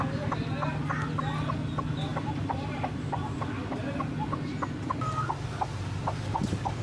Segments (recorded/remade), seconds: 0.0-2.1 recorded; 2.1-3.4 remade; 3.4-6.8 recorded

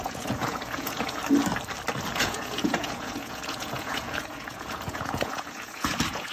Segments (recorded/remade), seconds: 0.0-1.2 remade; 1.2-2.1 recorded; 2.1-6.3 remade